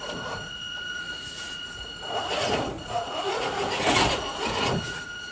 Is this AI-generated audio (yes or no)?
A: yes